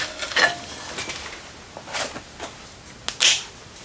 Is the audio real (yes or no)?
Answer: yes